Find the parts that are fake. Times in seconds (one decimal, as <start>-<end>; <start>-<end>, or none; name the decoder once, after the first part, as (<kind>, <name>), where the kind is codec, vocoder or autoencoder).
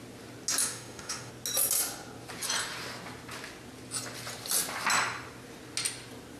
0.6-1.3 (autoencoder, DAC-VAE)